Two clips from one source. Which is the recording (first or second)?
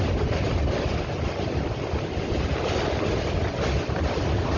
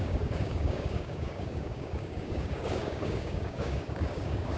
first